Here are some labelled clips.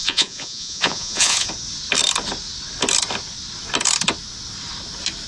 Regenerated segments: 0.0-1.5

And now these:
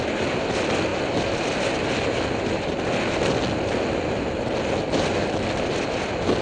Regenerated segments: none